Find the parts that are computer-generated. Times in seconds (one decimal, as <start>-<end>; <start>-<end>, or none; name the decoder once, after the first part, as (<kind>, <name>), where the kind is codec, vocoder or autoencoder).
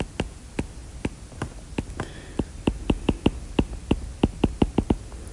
none